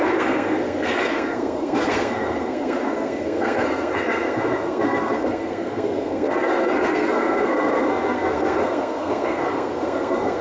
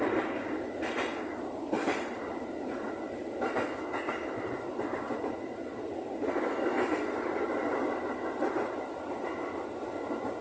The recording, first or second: second